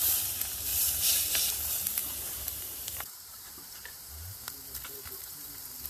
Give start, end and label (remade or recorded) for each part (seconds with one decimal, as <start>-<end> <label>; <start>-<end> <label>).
0.0-0.7 recorded; 0.7-1.5 remade; 1.5-2.0 recorded; 2.0-5.5 remade; 5.5-5.9 recorded